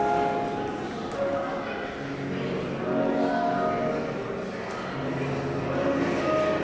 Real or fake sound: real